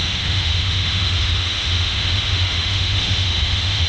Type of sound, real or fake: fake